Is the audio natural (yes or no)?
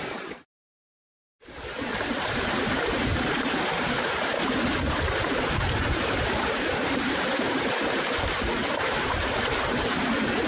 no